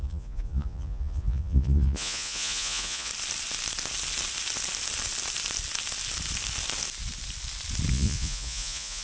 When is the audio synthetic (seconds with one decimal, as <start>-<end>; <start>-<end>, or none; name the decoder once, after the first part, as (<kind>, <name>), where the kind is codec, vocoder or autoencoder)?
0.0-3.1 (vocoder, Vocos); 7.9-9.0